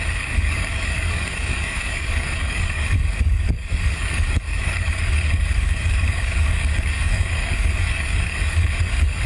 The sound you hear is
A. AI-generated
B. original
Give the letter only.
A